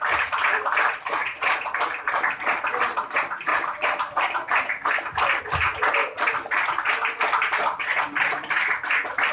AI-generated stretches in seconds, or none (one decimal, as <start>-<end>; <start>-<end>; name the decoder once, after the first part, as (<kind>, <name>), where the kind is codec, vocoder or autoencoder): 1.2-1.8 (vocoder, Vocos)